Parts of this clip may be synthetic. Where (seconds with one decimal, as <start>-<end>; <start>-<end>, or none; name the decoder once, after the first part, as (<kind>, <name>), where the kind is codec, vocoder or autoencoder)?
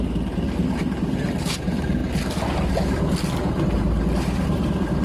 none